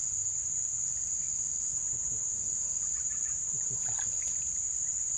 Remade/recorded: recorded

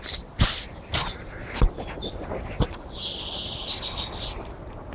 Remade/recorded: recorded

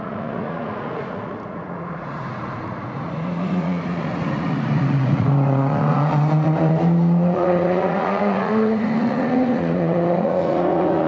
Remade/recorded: remade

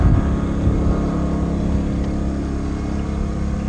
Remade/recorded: recorded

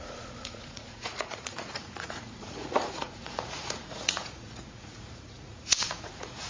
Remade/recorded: remade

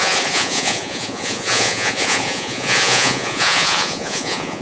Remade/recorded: remade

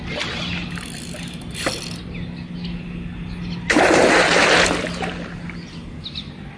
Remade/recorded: recorded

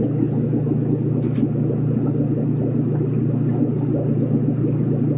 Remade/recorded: recorded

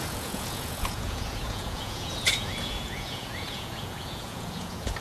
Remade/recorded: remade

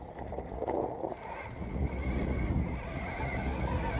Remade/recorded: remade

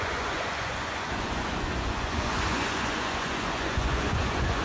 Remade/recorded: remade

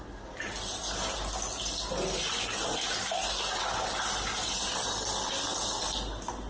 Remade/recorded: recorded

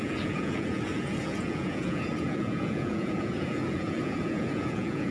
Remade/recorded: remade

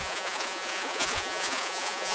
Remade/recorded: remade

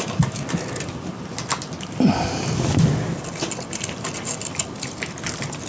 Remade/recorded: recorded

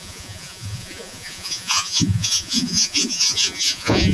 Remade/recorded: remade